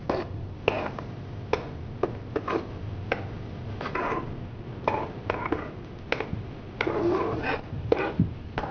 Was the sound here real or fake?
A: real